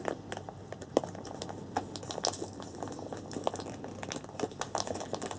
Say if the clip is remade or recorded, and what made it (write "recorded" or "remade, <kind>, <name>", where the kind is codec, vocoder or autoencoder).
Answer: recorded